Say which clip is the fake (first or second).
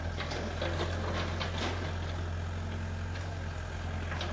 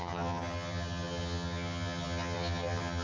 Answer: second